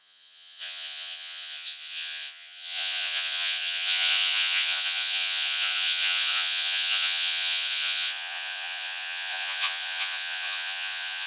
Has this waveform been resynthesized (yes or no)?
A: yes